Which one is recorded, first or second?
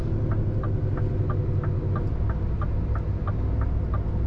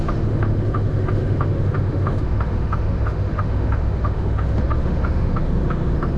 first